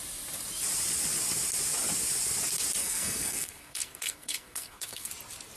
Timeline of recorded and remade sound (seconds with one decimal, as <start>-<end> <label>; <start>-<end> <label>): 0.0-2.8 recorded; 2.8-5.1 remade; 5.1-5.6 recorded